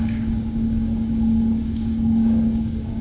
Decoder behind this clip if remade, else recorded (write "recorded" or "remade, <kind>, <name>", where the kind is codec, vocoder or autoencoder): remade, codec, DAC